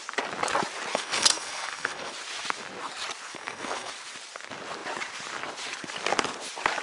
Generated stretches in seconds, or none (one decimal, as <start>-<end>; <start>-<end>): 0.9-2.1; 3.3-3.9